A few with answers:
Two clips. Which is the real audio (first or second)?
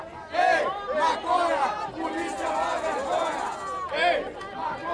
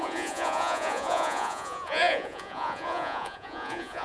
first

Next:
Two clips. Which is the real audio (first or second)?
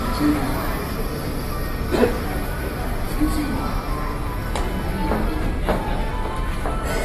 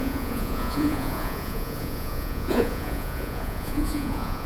first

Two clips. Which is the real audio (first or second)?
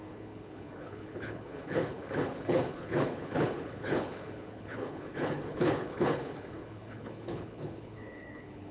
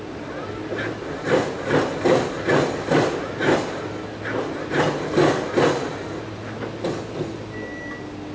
second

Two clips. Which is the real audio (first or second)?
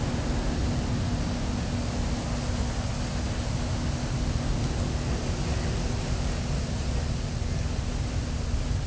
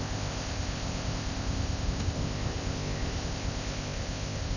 first